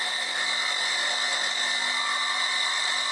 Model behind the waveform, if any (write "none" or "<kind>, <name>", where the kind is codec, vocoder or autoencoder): none